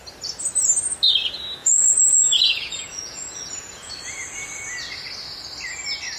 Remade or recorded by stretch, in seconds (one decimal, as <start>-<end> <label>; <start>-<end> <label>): 0.0-1.6 recorded; 1.6-3.9 remade; 3.9-6.2 recorded